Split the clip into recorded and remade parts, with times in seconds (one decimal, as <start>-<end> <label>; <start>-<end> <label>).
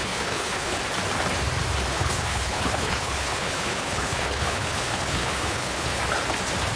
0.0-0.8 remade; 0.8-1.9 recorded; 1.9-6.0 remade; 6.0-6.8 recorded